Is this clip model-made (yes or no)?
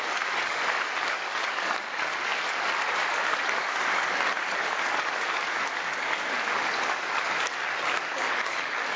yes